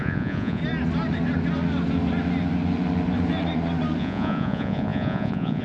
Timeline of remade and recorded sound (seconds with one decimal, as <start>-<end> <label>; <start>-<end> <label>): 0.0-0.6 remade; 0.6-4.0 recorded; 4.0-5.6 remade